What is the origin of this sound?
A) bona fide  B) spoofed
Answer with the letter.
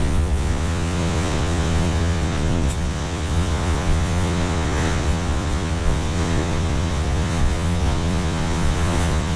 B